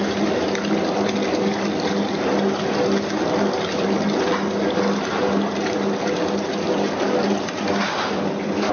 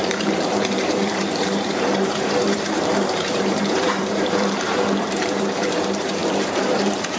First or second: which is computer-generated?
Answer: second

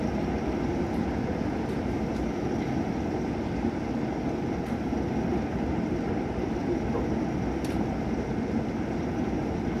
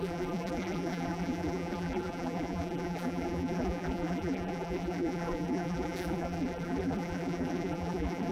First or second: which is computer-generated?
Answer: second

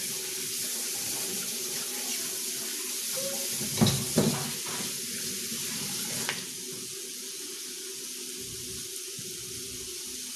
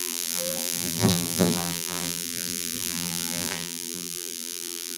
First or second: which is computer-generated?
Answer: second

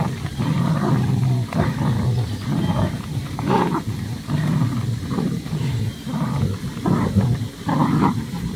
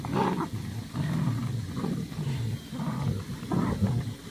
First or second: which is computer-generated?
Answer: first